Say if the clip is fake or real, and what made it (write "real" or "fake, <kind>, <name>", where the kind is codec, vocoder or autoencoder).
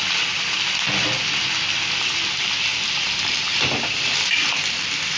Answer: real